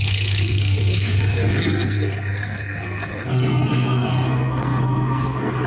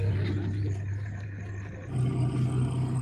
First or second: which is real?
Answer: second